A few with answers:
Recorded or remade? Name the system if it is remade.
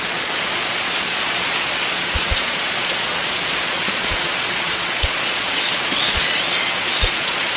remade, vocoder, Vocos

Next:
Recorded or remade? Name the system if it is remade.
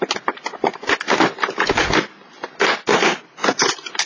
recorded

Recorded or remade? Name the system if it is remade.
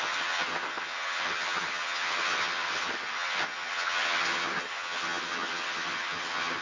remade, vocoder, HiFi-GAN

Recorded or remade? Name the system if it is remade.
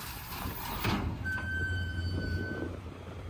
remade, vocoder, BigVGAN v2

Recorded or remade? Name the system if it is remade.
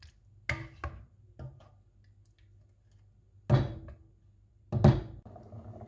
recorded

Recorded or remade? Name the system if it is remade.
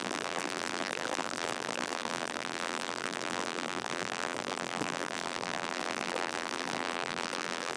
remade, vocoder, BigVGAN v2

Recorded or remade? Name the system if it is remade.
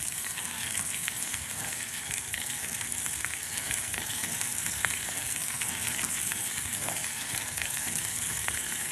remade, codec, SNAC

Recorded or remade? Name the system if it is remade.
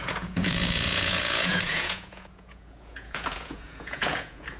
remade, vocoder, Vocos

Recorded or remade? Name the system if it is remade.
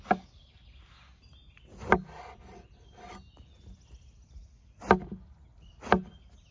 recorded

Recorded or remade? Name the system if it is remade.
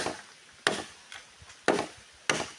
recorded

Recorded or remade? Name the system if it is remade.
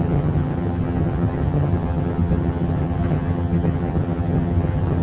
remade, vocoder, HiFi-GAN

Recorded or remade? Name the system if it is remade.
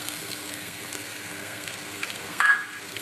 remade, codec, SNAC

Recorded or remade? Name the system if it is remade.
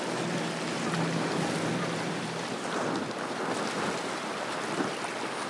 recorded